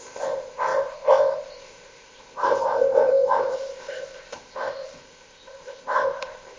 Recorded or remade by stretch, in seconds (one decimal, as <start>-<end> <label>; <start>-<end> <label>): 0.0-6.6 remade